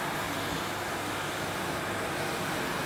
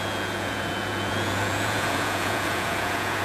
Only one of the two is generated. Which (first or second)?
second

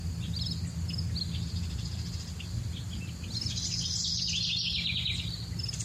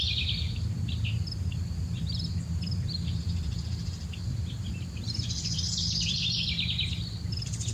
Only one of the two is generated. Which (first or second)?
second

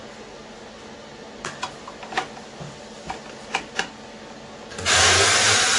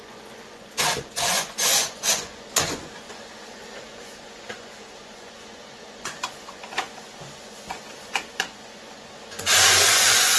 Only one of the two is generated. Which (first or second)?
second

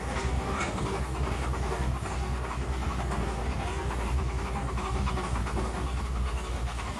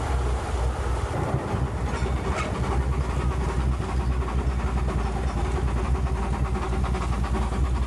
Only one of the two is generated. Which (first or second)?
first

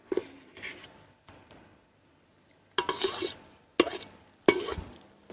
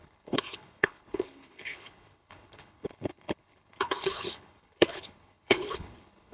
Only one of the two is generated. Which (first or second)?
second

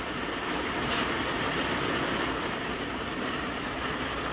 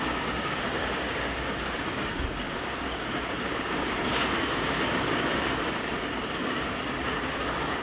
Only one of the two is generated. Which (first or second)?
second